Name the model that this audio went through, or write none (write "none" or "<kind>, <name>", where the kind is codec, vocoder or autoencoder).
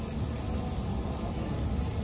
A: none